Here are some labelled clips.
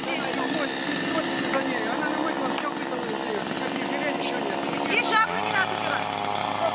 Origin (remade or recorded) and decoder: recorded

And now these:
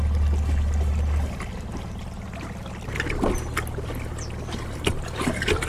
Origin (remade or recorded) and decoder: recorded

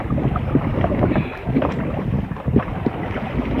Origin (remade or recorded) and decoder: recorded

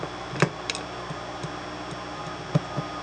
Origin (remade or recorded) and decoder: recorded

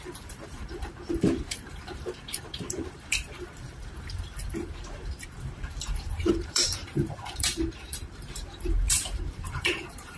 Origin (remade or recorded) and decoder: remade, vocoder, BigVGAN v2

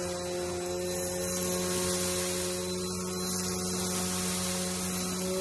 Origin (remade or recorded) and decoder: recorded